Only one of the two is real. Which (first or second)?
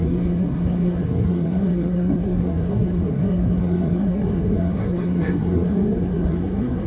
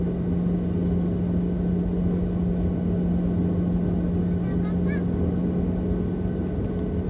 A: second